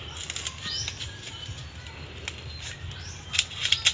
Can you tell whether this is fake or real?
real